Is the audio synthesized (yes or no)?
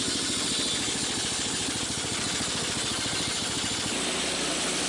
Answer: no